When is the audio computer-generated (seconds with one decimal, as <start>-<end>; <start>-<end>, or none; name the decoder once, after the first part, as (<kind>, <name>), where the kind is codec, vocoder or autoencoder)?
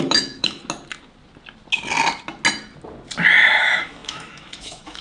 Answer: 0.0-0.6 (autoencoder, DAC-VAE); 3.6-5.0